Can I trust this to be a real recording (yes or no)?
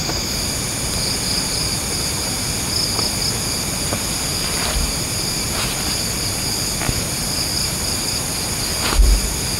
yes